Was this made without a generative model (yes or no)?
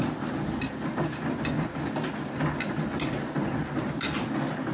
yes